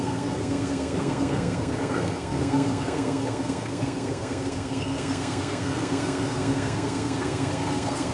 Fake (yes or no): yes